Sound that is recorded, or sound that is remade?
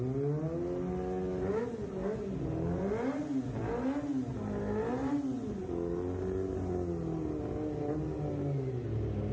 recorded